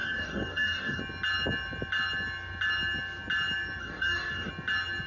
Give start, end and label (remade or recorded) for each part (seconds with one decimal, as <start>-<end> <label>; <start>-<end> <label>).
0.0-1.0 remade; 1.0-3.8 recorded; 3.8-4.5 remade; 4.5-5.1 recorded